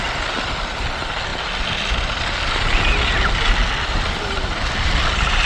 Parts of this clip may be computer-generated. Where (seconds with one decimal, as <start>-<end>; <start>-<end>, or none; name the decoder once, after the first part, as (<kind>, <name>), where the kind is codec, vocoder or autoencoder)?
none